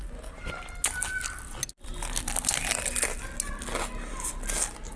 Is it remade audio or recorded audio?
recorded